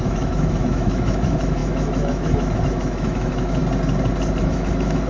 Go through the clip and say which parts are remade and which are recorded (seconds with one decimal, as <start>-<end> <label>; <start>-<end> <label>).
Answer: 0.0-3.6 remade; 3.6-4.4 recorded; 4.4-5.1 remade